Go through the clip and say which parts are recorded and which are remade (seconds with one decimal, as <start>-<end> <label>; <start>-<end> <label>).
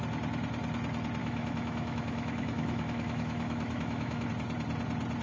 0.0-1.2 recorded; 1.2-4.3 remade; 4.3-5.2 recorded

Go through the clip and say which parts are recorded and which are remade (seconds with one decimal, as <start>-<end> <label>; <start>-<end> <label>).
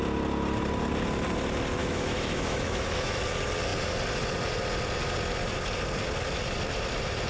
0.0-1.8 recorded; 1.8-3.2 remade; 3.2-7.3 recorded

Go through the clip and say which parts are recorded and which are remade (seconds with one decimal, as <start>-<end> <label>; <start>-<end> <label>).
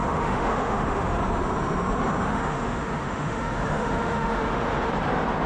0.0-1.2 remade; 1.2-2.3 recorded; 2.3-4.9 remade; 4.9-5.5 recorded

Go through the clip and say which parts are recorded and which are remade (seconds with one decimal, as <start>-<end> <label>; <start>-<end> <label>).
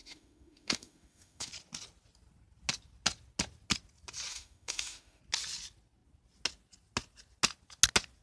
0.0-1.5 remade; 1.5-4.3 recorded; 4.3-5.2 remade; 5.2-8.2 recorded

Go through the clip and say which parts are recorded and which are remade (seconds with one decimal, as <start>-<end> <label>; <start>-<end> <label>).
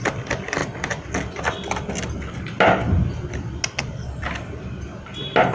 0.0-5.5 recorded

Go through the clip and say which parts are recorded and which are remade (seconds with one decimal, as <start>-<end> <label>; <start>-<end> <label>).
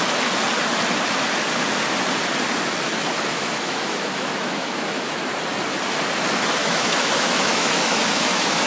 0.0-3.3 recorded; 3.3-5.2 remade; 5.2-6.6 recorded; 6.6-8.7 remade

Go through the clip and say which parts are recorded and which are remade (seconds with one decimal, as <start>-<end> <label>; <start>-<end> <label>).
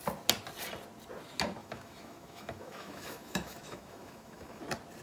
0.0-1.6 recorded; 1.6-4.6 remade; 4.6-5.0 recorded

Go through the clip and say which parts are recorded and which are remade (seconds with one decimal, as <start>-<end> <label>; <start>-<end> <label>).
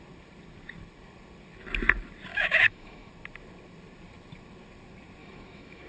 0.0-2.3 recorded; 2.3-3.1 remade; 3.1-5.2 recorded; 5.2-5.9 remade